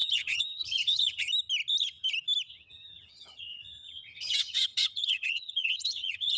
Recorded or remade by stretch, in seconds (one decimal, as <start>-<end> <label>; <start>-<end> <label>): 0.0-1.3 remade; 1.3-2.5 recorded; 2.5-6.4 remade